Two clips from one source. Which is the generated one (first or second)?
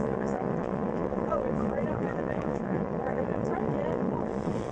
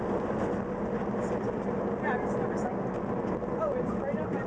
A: first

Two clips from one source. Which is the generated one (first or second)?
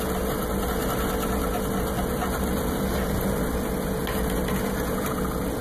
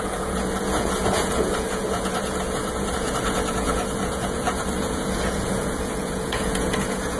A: second